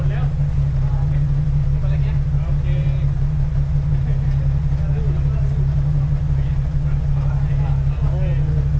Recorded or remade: recorded